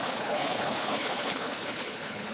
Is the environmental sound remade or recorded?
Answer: remade